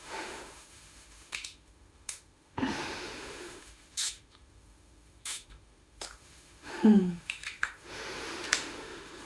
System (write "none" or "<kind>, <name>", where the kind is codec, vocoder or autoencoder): autoencoder, DAC-VAE